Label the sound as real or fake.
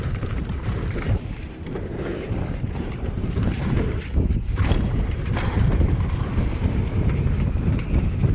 fake